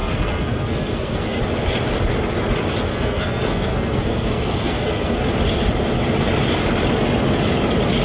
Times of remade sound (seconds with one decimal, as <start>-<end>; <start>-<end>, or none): 0.0-1.4; 2.9-5.2